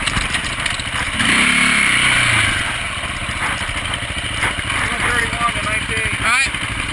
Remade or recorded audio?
recorded